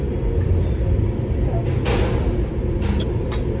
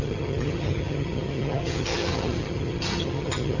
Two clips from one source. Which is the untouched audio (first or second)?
first